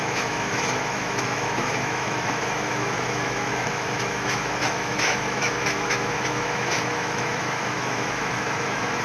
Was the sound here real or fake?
fake